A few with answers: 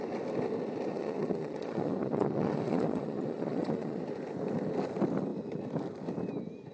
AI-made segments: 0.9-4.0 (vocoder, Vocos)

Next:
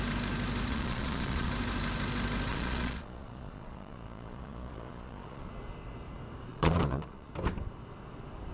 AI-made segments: 0.7-1.5 (vocoder, Vocos); 2.5-5.5; 6.5-7.3

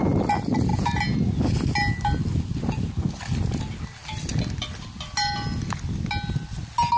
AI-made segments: none

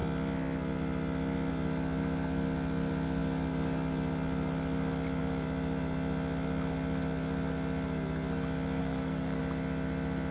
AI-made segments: 8.8-9.4 (codec, SNAC)

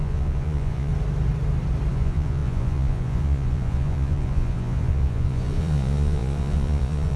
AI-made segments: 0.0-0.9 (vocoder, Vocos); 1.9-7.2

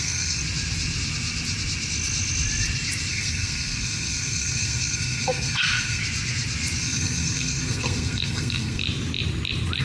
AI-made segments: 0.0-0.4 (codec, SNAC); 3.1-6.0; 6.8-8.8